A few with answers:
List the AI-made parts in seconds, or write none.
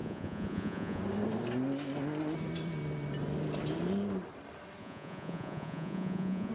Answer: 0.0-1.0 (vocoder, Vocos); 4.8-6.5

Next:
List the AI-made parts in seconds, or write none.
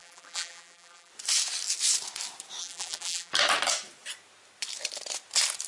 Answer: 0.0-1.1 (vocoder, BigVGAN v2); 2.6-3.3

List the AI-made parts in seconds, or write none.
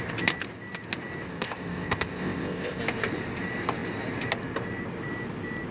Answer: 1.3-2.8 (codec, ZipCodec)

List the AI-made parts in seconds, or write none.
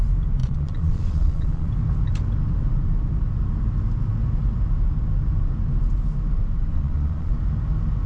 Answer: 0.4-1.7 (vocoder, Vocos); 6.7-7.3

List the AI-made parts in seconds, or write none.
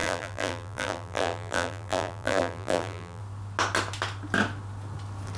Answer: 0.0-3.2 (vocoder, BigVGAN v2)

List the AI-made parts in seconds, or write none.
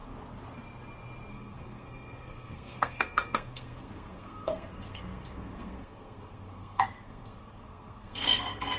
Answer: 1.3-8.8 (codec, SNAC)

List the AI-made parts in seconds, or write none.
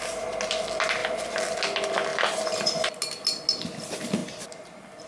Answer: none